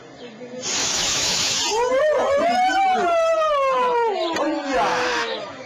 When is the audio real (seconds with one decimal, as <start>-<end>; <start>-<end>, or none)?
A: 0.0-0.8; 1.6-4.9